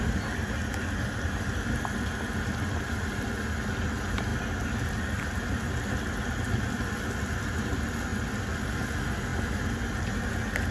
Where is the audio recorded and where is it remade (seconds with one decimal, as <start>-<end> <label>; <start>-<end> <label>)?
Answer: 0.0-10.7 recorded